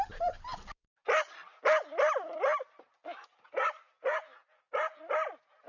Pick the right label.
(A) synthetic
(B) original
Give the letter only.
B